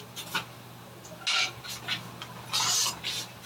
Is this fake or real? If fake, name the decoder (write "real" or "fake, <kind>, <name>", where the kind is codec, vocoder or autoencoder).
real